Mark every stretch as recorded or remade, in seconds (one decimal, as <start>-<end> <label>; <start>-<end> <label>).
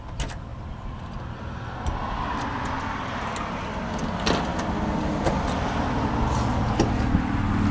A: 0.0-7.7 recorded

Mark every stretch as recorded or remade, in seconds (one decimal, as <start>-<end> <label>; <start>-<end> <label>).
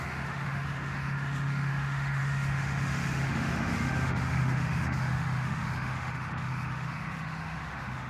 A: 0.0-8.1 remade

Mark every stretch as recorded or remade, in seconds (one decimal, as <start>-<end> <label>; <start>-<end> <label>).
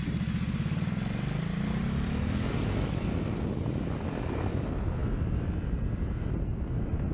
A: 0.0-7.1 recorded